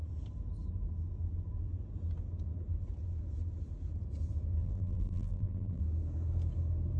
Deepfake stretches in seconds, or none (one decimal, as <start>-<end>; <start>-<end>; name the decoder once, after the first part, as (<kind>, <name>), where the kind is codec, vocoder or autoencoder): 4.6-5.8 (vocoder, BigVGAN v2)